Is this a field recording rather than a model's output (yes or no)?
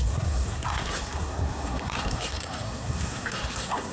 no